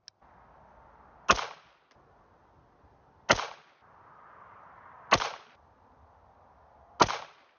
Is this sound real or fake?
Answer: real